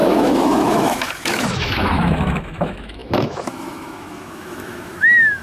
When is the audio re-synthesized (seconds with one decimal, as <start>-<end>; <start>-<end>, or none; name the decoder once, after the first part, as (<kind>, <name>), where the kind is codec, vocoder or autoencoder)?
0.0-5.4 (autoencoder, DAC-VAE)